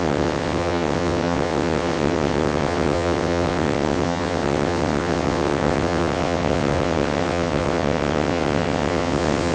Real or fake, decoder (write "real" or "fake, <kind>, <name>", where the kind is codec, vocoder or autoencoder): fake, vocoder, WaveNeXt